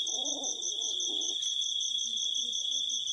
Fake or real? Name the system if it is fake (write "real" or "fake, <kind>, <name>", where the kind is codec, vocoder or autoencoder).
fake, vocoder, BigVGAN v2